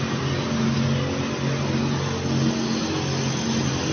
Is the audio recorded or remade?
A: recorded